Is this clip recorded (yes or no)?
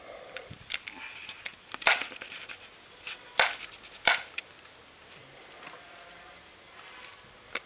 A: yes